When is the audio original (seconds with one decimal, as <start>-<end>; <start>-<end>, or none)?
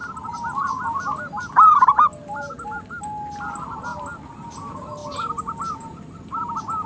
3.0-5.0; 6.5-6.9